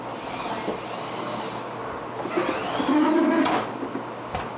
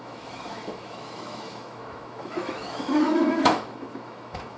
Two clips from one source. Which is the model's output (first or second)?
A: second